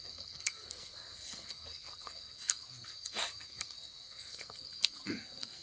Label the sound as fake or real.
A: fake